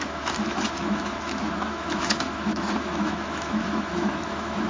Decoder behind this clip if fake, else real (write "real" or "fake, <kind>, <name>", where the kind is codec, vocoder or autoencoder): fake, autoencoder, DAC-VAE